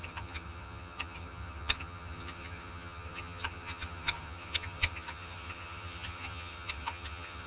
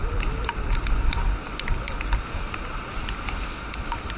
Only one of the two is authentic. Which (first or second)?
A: second